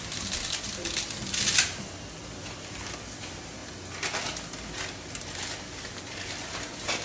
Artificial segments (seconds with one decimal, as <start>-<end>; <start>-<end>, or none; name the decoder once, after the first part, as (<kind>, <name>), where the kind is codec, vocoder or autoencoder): none